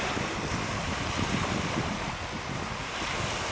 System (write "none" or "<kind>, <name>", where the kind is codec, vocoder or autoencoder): none